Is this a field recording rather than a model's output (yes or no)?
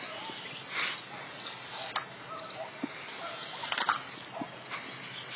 yes